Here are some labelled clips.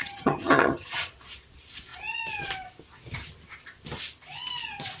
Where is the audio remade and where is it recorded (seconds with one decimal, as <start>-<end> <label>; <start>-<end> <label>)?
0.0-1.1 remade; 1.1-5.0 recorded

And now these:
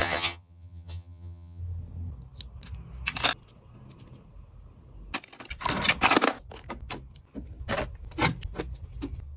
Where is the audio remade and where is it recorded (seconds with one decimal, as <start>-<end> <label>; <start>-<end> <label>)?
0.0-1.6 remade; 1.6-9.4 recorded

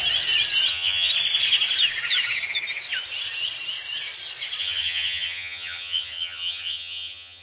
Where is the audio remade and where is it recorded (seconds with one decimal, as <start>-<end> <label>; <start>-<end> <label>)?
0.0-0.7 recorded; 0.7-1.1 remade; 1.1-4.6 recorded; 4.6-7.4 remade

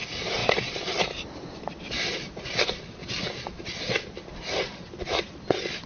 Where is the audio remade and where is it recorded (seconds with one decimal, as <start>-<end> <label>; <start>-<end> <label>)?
0.0-5.9 recorded

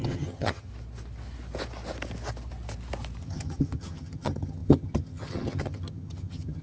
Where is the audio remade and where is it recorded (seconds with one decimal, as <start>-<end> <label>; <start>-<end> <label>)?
0.0-0.7 remade; 0.7-3.2 recorded; 3.2-6.6 remade

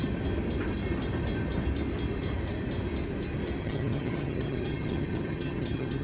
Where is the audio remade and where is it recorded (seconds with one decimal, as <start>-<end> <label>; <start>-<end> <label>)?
0.0-3.6 recorded; 3.6-6.0 remade

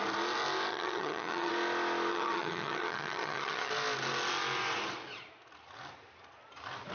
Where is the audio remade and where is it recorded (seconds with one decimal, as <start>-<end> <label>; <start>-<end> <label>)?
0.0-0.7 recorded; 0.7-1.5 remade; 1.5-2.1 recorded; 2.1-3.7 remade; 3.7-6.9 recorded